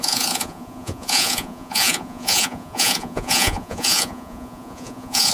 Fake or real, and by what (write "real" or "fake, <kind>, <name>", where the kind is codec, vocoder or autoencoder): fake, vocoder, Vocos